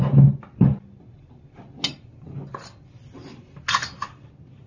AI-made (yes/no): no